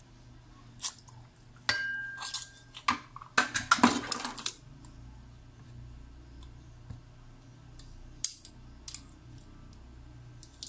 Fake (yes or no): no